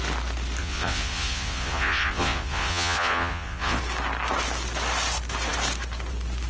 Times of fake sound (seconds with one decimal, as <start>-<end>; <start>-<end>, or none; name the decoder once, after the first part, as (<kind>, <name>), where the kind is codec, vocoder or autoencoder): 0.6-3.8 (vocoder, Vocos)